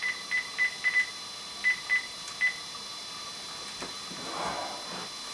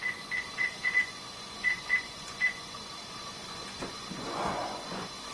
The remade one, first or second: second